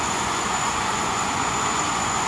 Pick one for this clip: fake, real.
fake